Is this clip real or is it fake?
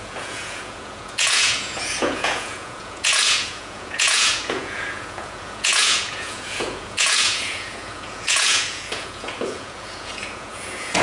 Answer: fake